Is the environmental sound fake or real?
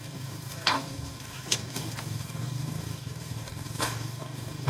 fake